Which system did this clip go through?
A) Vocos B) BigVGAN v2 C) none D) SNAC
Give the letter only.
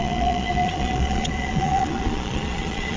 A